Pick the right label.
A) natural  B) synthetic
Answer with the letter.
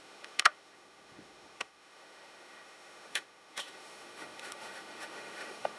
B